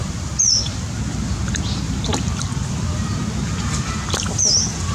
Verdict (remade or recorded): recorded